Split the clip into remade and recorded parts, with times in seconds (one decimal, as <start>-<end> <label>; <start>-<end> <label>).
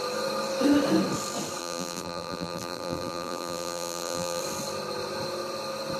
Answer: 0.0-1.6 recorded; 1.6-4.4 remade; 4.4-6.0 recorded